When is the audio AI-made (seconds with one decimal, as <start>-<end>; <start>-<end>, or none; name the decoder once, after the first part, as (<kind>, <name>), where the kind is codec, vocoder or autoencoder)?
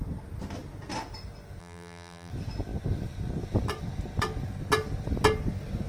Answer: 1.6-2.3 (vocoder, BigVGAN v2)